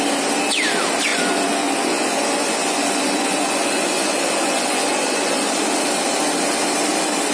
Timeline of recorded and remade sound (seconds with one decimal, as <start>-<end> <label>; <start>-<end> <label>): 0.0-1.1 recorded; 1.1-5.5 remade; 5.5-7.3 recorded